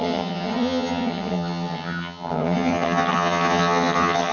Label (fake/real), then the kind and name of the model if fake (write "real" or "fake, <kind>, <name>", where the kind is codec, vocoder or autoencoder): fake, vocoder, HiFi-GAN